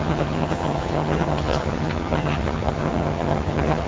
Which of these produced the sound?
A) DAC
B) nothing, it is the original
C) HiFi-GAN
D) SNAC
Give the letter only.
C